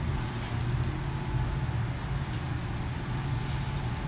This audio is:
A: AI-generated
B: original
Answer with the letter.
B